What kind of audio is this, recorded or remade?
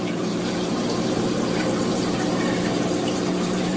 remade